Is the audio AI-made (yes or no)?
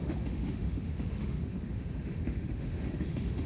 yes